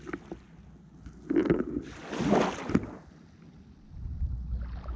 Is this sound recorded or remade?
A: recorded